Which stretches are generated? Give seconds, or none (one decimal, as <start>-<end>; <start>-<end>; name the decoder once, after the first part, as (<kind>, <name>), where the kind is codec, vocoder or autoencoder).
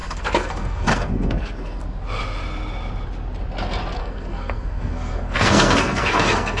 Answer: 0.0-1.8 (codec, SNAC); 4.0-6.6